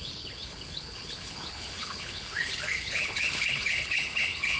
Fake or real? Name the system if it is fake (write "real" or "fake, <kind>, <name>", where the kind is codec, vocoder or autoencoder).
fake, codec, HILCodec